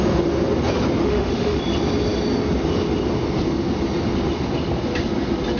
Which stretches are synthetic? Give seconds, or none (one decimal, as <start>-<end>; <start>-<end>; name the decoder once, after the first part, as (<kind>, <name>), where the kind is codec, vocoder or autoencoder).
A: 1.0-1.6 (autoencoder, DAC-VAE)